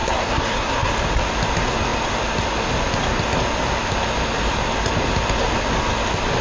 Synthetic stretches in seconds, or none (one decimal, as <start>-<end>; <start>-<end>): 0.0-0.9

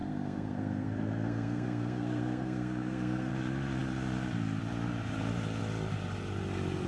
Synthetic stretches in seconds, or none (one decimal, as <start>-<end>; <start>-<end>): 0.0-3.3

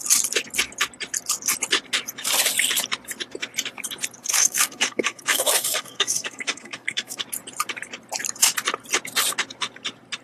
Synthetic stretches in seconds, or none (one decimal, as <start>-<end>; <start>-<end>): 4.2-7.2

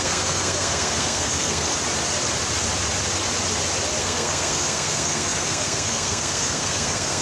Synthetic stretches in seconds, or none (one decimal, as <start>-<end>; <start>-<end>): 0.0-1.7; 4.0-7.2